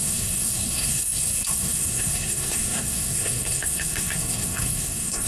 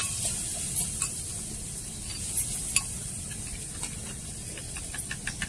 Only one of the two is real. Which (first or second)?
second